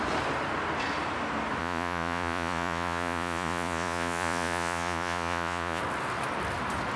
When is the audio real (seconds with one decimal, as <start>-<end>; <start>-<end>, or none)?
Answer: 0.0-1.6; 5.8-7.0